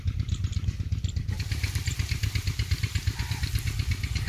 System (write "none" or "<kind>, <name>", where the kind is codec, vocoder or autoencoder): none